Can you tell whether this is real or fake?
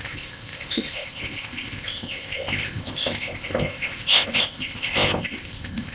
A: fake